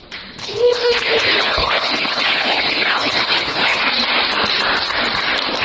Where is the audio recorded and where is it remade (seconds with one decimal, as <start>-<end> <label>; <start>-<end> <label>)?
0.0-0.4 recorded; 0.4-3.8 remade; 3.8-5.6 recorded

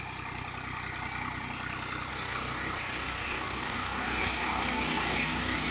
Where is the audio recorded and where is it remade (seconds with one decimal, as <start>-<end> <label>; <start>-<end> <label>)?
0.0-2.1 recorded; 2.1-5.7 remade